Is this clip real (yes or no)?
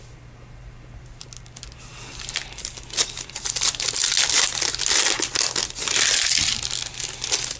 yes